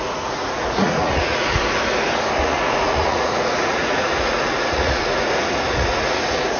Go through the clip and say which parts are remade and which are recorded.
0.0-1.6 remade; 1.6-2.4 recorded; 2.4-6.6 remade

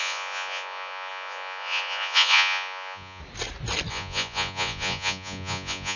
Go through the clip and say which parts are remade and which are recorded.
0.0-3.2 remade; 3.2-3.9 recorded; 3.9-6.0 remade

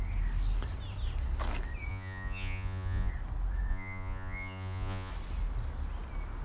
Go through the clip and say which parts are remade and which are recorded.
0.0-1.9 recorded; 1.9-3.1 remade; 3.1-3.7 recorded; 3.7-5.1 remade; 5.1-6.4 recorded

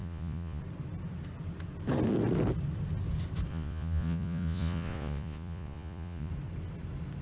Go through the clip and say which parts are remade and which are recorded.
0.0-0.6 remade; 0.6-3.5 recorded; 3.5-6.3 remade; 6.3-7.2 recorded